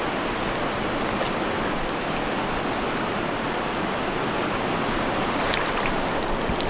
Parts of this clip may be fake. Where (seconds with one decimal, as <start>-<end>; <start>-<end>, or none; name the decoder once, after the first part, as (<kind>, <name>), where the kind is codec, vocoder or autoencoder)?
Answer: none